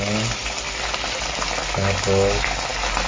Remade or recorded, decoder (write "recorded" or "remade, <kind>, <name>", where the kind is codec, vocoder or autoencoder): recorded